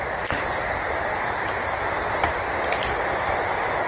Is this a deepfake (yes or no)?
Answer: no